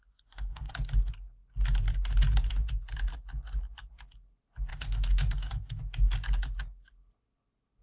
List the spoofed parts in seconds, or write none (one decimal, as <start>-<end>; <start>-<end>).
0.0-0.7; 4.7-5.8